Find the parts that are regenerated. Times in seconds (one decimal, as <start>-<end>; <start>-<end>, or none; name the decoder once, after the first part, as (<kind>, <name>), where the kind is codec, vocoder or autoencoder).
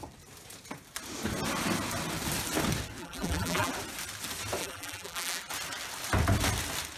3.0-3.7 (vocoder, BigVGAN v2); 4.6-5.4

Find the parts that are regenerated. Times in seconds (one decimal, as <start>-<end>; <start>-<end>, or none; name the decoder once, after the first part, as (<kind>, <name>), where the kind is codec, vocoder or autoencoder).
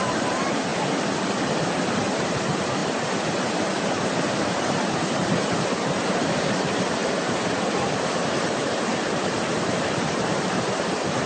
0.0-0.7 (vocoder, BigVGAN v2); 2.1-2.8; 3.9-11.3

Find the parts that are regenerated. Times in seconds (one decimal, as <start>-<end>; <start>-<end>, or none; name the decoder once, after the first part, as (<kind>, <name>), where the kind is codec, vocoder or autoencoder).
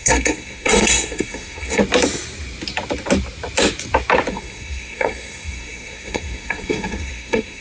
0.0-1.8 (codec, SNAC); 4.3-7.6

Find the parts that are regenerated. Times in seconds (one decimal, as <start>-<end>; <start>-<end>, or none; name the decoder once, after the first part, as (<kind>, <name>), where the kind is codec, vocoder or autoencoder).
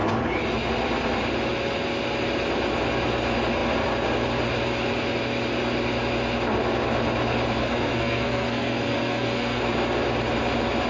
7.6-9.6 (codec, SNAC)